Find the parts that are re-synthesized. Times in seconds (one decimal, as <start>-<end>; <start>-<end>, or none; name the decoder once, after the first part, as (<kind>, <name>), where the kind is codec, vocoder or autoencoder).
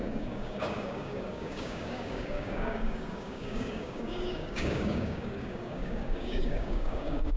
0.0-7.4 (codec, DAC)